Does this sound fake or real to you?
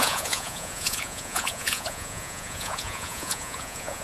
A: fake